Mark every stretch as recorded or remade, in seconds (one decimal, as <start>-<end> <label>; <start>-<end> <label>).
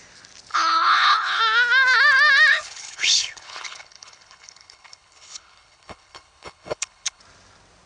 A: 0.0-0.5 recorded; 0.5-1.4 remade; 1.4-2.5 recorded; 2.5-7.2 remade; 7.2-7.9 recorded